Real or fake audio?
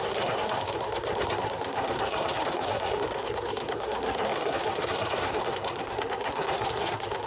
fake